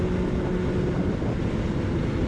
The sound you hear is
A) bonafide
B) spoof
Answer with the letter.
A